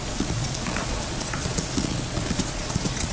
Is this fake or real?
fake